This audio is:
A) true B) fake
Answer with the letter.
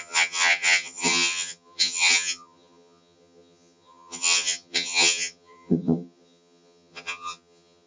B